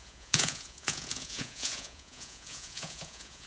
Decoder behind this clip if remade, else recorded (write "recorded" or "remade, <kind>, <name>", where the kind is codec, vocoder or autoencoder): remade, vocoder, Vocos